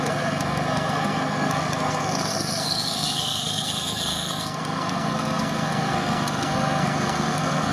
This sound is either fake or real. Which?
fake